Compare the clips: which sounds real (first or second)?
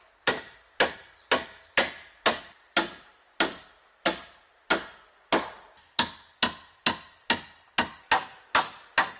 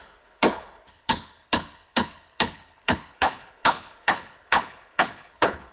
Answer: first